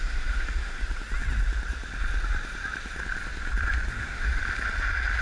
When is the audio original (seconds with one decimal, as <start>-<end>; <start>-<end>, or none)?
0.8-3.9; 4.4-5.2

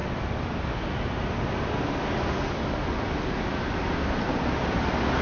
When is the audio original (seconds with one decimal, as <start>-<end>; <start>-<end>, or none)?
0.0-5.2

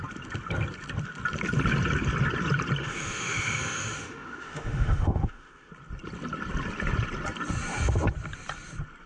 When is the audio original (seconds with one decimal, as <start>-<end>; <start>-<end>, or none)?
0.0-2.8; 5.7-9.1